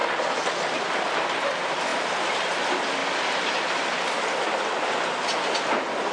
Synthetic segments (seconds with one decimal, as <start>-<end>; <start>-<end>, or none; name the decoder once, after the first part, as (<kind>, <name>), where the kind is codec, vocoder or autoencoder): none

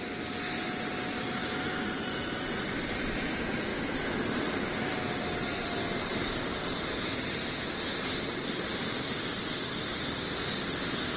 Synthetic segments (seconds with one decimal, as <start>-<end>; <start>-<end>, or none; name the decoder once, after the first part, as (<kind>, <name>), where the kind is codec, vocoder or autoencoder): 3.7-6.8 (vocoder, BigVGAN v2); 8.8-9.9